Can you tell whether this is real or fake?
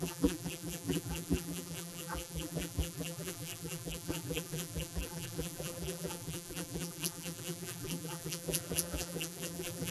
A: fake